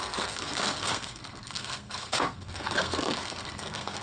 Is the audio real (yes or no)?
no